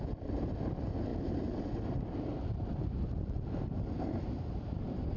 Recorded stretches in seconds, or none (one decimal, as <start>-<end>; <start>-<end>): 0.0-1.1; 4.0-5.2